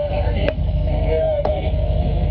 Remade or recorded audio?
remade